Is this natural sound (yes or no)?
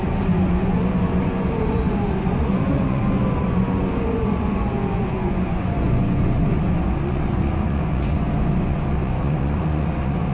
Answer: no